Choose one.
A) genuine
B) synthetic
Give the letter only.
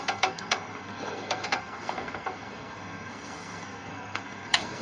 B